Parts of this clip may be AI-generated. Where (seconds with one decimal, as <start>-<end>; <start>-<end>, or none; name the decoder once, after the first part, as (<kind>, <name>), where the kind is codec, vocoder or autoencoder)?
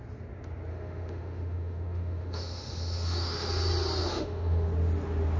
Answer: 0.7-3.5 (autoencoder, DAC-VAE); 4.0-4.7